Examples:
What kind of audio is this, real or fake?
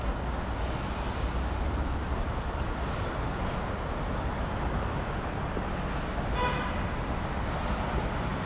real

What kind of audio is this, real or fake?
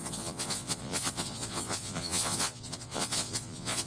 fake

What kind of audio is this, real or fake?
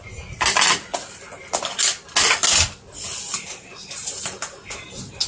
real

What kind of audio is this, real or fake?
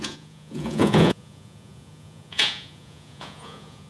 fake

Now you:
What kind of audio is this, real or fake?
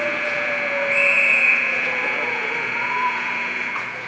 fake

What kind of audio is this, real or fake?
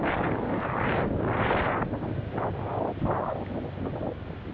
real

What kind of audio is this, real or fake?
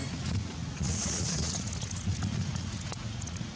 fake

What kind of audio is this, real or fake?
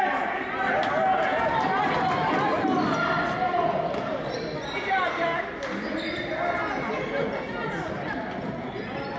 real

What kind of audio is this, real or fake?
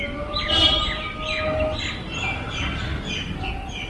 real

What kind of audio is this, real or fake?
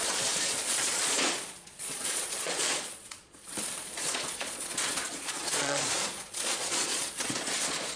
fake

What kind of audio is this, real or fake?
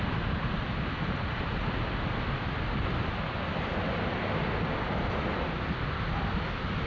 real